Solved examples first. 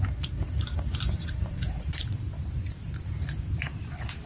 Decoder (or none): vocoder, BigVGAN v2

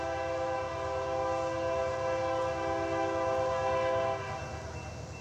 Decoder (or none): none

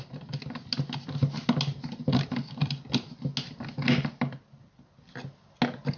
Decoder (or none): none